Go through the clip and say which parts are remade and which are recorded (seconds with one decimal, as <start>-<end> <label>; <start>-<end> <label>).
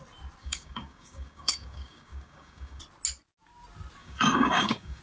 0.0-0.4 recorded; 0.4-2.8 remade; 2.8-4.0 recorded; 4.0-5.0 remade